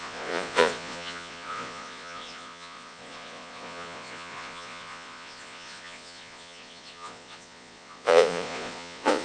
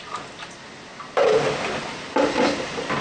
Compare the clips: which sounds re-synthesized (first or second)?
first